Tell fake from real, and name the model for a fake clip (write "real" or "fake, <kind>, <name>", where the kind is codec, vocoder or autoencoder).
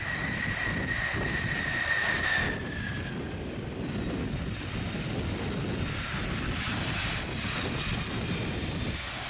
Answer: real